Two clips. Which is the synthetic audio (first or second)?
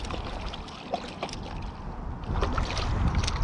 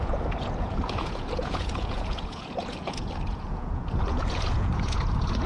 second